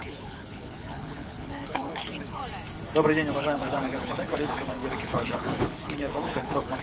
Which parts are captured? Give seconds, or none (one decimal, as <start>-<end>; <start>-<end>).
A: 2.4-3.4